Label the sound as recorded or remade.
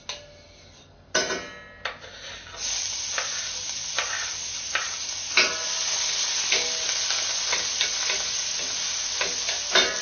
recorded